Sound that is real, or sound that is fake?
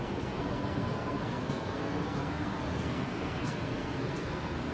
fake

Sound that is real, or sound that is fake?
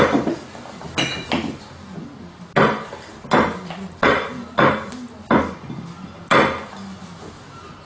real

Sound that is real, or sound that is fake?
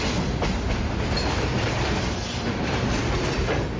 real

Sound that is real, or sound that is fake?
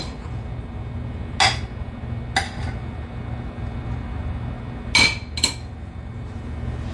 real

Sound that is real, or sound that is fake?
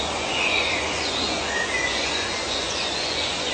fake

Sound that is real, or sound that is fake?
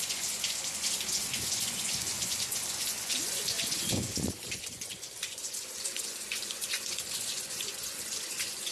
fake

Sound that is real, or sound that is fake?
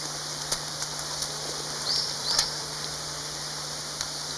fake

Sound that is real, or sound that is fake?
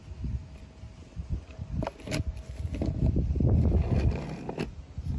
real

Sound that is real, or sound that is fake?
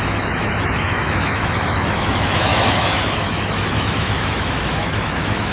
fake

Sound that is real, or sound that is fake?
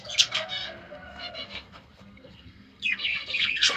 fake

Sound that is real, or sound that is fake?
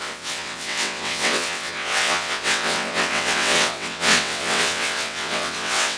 fake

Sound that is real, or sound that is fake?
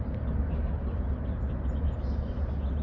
real